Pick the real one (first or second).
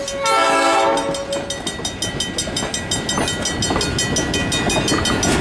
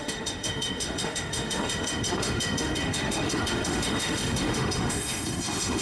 first